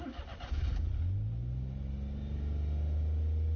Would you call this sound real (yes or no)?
yes